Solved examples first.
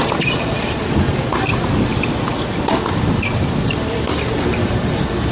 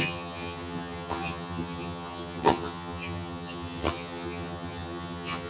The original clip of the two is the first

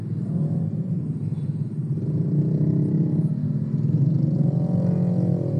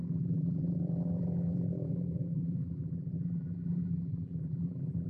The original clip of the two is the first